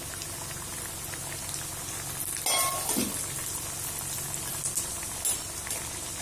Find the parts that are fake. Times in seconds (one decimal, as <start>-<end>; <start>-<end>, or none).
none